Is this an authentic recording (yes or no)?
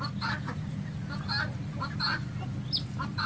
yes